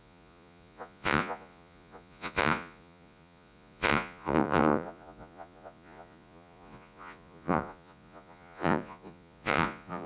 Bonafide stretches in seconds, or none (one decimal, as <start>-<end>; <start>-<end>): none